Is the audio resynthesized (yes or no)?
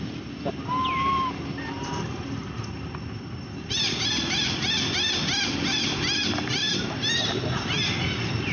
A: no